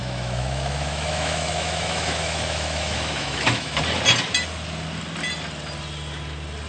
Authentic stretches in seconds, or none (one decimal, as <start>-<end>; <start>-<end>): 3.8-6.7